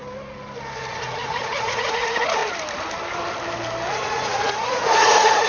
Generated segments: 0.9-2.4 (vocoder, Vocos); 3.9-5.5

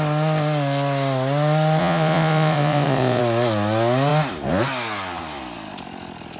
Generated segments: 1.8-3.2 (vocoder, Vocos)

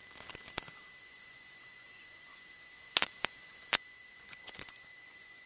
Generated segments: 1.0-5.5 (vocoder, Vocos)

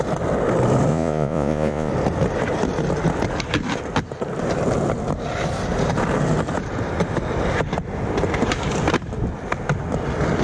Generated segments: 0.9-1.9 (vocoder, Vocos)